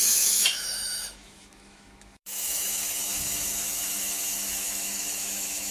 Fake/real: fake